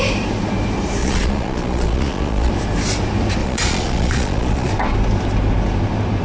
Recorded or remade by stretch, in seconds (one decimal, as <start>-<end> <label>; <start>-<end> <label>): 0.0-1.0 recorded; 1.0-2.5 remade; 2.5-3.4 recorded; 3.4-4.7 remade; 4.7-6.2 recorded